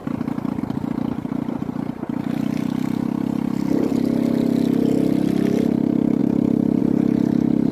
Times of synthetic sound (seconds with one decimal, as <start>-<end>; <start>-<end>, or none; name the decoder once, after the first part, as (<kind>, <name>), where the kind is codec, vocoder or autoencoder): none